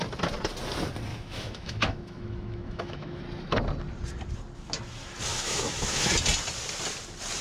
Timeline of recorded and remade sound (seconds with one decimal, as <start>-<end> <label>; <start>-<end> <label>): 0.0-1.1 recorded; 1.1-3.2 remade; 3.2-5.3 recorded; 5.3-6.1 remade; 6.1-7.4 recorded